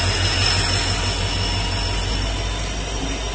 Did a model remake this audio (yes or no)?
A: no